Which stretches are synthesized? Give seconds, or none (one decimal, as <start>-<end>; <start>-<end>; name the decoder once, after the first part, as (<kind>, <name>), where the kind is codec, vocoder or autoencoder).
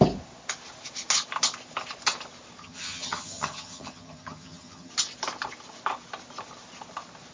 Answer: 2.6-4.9 (vocoder, HiFi-GAN)